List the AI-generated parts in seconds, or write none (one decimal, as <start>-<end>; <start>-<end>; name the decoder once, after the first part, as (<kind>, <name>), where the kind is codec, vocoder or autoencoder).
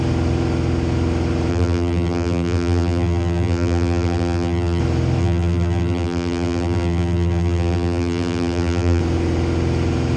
1.5-4.8 (vocoder, BigVGAN v2); 5.2-9.0